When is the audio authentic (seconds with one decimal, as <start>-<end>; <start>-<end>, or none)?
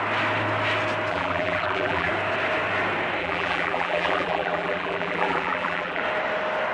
0.0-1.1; 2.1-3.2; 6.0-6.7